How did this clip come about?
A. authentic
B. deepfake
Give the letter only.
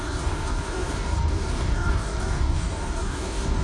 B